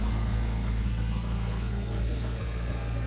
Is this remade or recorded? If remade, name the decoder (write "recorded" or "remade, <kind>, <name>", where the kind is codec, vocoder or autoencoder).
remade, codec, SNAC